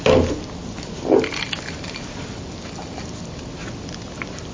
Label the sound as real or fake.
real